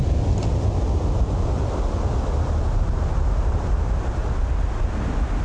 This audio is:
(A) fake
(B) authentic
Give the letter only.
B